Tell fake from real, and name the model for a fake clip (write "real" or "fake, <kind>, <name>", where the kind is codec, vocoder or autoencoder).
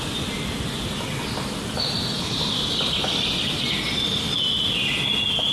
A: real